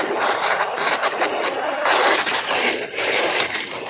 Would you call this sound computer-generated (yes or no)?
yes